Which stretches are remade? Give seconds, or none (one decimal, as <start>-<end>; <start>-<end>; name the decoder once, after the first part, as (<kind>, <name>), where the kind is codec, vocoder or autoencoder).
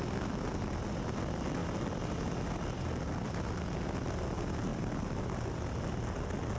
none